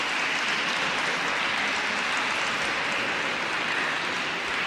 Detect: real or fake real